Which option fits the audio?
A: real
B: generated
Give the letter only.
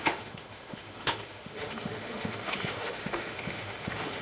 B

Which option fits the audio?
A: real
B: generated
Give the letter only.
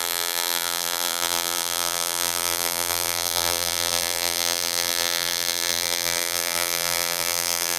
B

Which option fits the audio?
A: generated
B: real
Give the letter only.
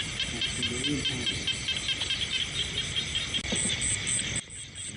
B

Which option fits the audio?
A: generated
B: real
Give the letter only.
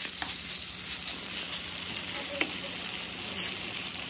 B